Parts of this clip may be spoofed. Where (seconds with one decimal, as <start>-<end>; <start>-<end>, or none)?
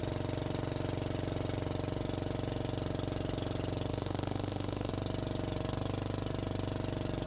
3.9-4.9